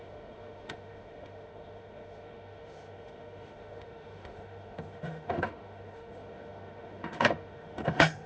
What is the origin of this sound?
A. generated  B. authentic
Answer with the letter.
A